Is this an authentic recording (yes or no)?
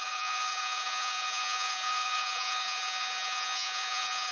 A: no